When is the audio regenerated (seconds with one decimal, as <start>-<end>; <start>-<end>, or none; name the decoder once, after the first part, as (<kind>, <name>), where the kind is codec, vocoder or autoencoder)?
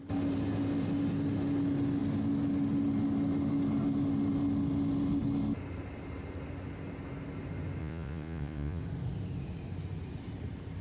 7.8-8.8 (vocoder, Vocos)